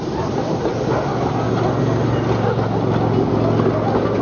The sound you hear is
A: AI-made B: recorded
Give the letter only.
B